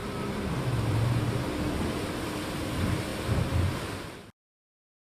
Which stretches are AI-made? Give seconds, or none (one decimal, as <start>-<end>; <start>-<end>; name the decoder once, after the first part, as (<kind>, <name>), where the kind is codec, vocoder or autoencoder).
0.0-1.4 (vocoder, BigVGAN v2)